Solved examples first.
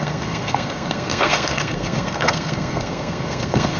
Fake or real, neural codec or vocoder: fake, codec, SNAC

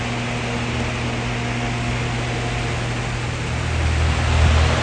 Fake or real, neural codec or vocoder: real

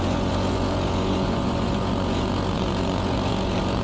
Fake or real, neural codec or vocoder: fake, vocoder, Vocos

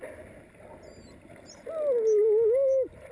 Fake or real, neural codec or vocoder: real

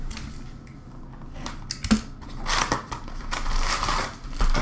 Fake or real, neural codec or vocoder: real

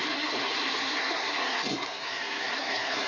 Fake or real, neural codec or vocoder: fake, codec, SNAC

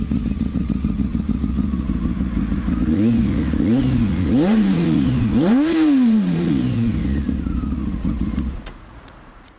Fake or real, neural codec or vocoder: fake, vocoder, Vocos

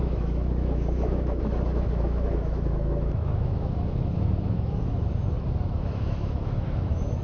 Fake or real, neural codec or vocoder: fake, autoencoder, DAC-VAE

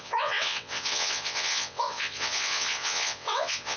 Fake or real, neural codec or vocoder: fake, vocoder, WaveNeXt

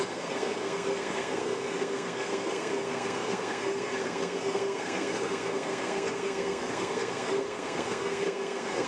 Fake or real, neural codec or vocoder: fake, codec, SNAC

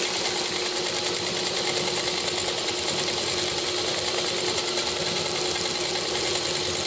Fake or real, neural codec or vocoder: real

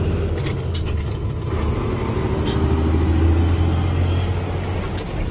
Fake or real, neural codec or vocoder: real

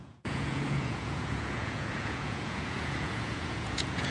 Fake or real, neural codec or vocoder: fake, vocoder, Vocos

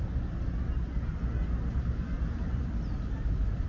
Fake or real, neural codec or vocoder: real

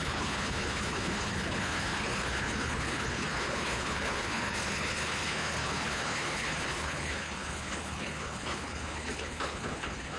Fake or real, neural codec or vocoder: fake, codec, HILCodec